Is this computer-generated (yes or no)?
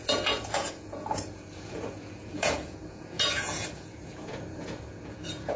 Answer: yes